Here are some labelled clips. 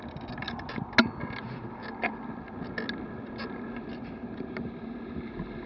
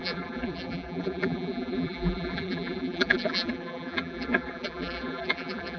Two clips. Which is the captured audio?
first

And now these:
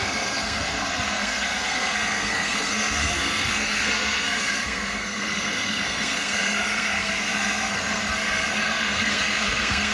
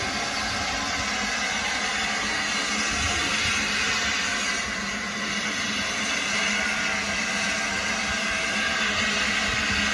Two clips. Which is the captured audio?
second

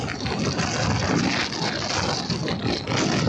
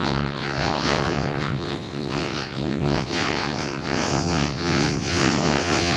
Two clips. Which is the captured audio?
first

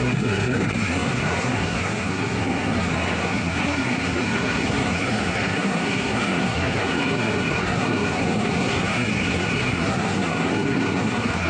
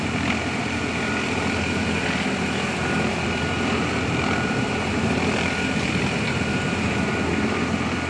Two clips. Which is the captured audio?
second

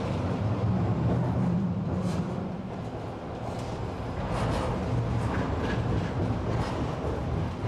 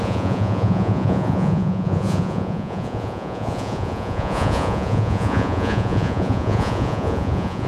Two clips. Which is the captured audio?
first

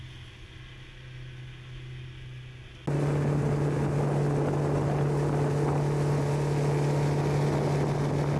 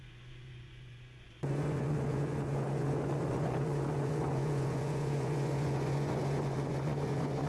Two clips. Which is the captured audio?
first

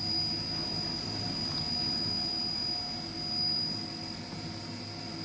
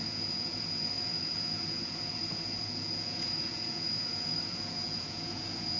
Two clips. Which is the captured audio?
first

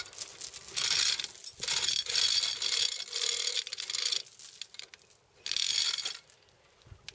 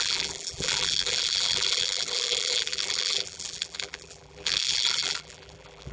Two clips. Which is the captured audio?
first